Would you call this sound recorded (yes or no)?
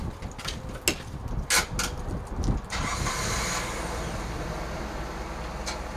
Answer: yes